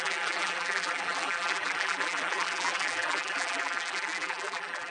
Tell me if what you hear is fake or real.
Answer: fake